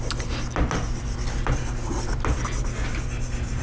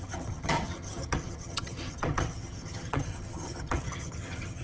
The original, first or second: first